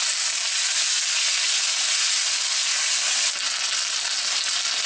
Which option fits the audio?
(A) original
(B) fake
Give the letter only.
A